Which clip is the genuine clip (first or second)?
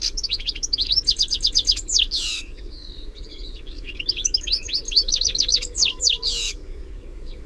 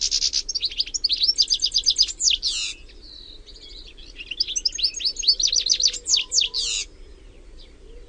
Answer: second